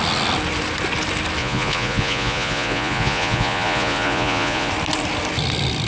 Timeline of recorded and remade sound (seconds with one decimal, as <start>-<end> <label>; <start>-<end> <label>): 0.0-1.4 recorded; 1.4-4.7 remade; 4.7-5.9 recorded